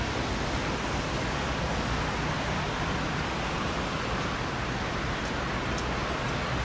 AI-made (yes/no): no